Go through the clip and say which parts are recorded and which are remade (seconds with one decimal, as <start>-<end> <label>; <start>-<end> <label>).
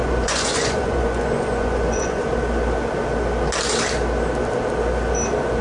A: 0.0-2.2 remade; 2.2-5.6 recorded